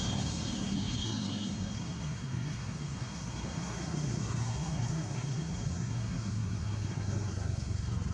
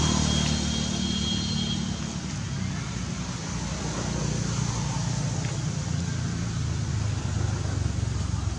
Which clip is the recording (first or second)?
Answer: second